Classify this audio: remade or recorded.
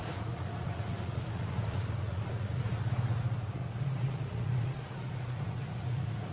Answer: remade